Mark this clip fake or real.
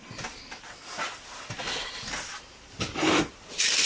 real